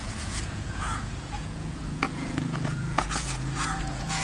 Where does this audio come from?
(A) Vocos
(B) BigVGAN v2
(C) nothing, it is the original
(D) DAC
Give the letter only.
A